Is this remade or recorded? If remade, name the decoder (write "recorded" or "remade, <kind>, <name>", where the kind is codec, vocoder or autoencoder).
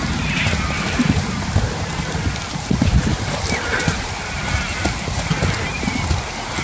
recorded